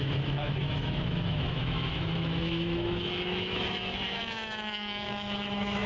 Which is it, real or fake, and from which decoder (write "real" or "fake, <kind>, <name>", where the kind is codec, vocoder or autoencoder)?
fake, autoencoder, DAC-VAE